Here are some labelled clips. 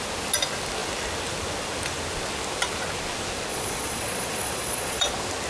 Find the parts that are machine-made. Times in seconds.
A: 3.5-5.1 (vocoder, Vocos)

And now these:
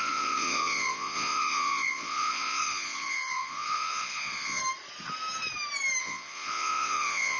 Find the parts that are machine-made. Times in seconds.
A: 0.0-4.6 (vocoder, Vocos); 6.0-7.4

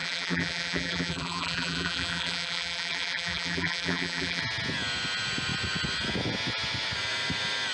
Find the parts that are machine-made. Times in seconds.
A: 0.0-4.4 (vocoder, BigVGAN v2)

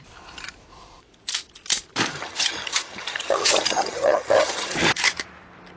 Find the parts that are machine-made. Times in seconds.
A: 2.1-4.7 (vocoder, HiFi-GAN)

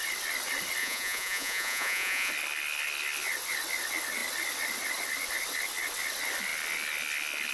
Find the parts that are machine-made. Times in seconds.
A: 0.8-2.3 (vocoder, Vocos)

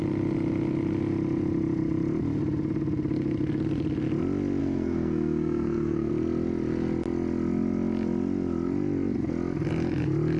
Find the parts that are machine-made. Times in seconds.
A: 4.6-6.1 (codec, SNAC)